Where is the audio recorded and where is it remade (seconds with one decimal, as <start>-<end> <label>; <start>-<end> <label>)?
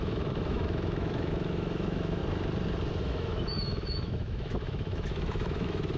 0.0-2.2 remade; 2.2-3.0 recorded; 3.0-6.0 remade